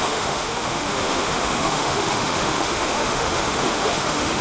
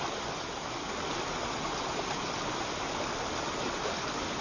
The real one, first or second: second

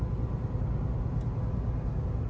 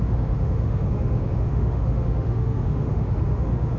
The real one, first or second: first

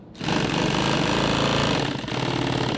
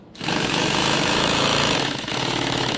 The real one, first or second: first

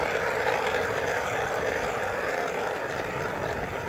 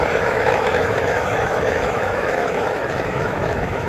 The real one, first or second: first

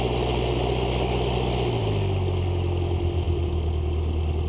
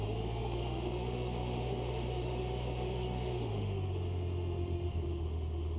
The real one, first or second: first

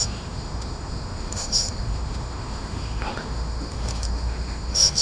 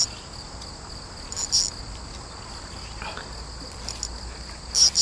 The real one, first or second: second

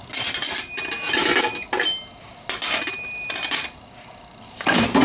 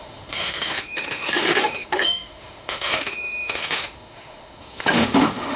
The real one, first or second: first